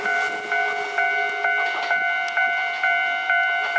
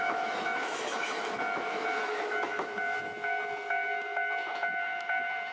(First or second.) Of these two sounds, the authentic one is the first